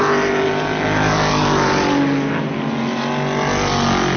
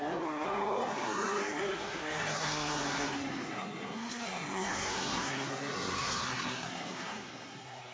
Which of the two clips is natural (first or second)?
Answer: first